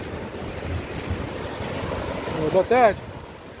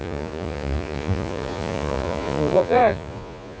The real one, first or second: first